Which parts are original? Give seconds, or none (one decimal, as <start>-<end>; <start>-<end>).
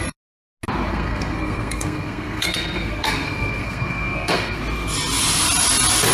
0.0-0.9; 4.6-6.1